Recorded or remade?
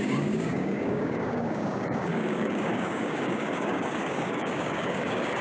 remade